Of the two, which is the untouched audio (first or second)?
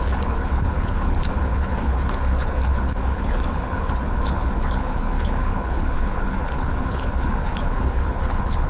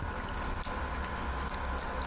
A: second